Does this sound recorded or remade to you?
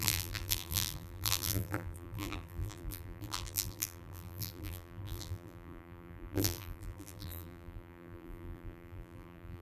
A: remade